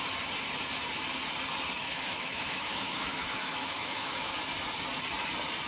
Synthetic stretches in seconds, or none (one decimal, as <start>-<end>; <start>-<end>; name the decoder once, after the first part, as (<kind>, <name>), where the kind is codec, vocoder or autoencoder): 1.8-4.3 (autoencoder, DAC-VAE)